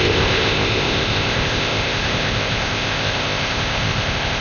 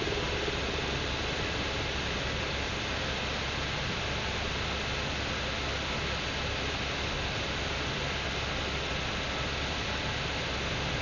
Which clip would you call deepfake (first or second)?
first